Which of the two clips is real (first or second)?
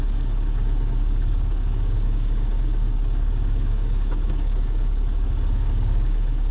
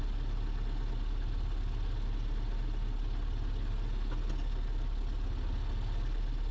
second